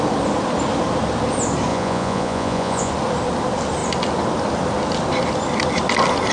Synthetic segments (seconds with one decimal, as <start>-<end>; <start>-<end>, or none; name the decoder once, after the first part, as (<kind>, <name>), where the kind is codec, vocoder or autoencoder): 1.7-2.9 (vocoder, Vocos)